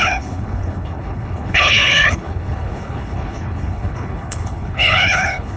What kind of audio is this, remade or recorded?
remade